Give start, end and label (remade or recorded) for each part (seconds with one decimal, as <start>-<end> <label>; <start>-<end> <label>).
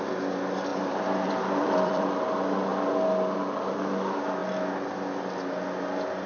0.0-0.7 recorded; 0.7-2.1 remade; 2.1-6.3 recorded